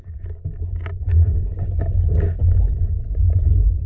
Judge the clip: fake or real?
real